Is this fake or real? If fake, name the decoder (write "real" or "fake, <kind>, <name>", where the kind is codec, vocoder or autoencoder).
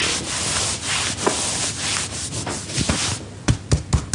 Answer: real